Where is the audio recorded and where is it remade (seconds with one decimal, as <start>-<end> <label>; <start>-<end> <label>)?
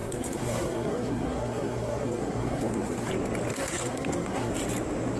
0.0-3.1 remade; 3.1-3.5 recorded; 3.5-4.5 remade; 4.5-5.2 recorded